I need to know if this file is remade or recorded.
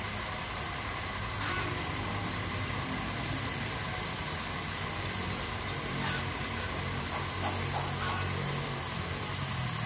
recorded